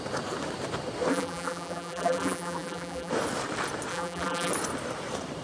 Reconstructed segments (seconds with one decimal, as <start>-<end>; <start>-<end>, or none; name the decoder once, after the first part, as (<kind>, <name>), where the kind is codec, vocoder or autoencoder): 1.1-3.1 (vocoder, BigVGAN v2); 3.9-4.5